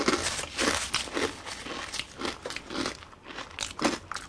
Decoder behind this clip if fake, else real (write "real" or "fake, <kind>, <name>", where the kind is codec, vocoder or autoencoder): real